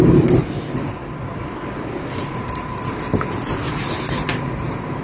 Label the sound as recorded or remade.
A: recorded